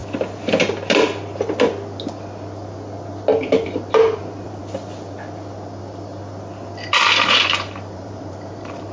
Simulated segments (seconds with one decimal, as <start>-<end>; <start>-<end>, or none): 3.6-4.6; 7.2-8.9